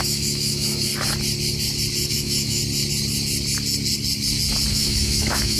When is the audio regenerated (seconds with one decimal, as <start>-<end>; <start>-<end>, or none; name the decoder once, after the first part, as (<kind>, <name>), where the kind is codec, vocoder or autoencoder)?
0.0-0.9 (autoencoder, DAC-VAE); 2.1-2.6; 4.7-5.6